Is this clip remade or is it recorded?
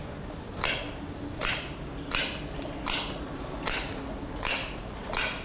recorded